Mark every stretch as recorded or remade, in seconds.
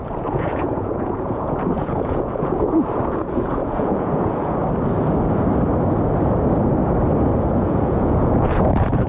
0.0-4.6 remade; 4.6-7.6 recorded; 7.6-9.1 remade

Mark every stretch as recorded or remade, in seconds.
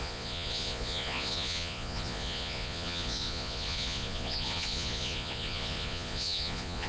0.0-6.9 remade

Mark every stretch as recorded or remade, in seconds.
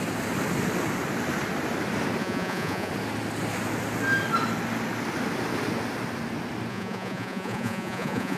0.0-2.2 recorded; 2.2-2.9 remade; 2.9-6.7 recorded; 6.7-8.4 remade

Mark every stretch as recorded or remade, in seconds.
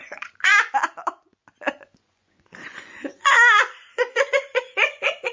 0.0-0.5 remade; 0.5-1.7 recorded; 1.7-5.3 remade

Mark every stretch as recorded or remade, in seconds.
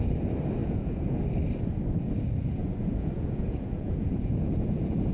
0.0-0.6 recorded; 0.6-1.2 remade; 1.2-2.6 recorded; 2.6-5.1 remade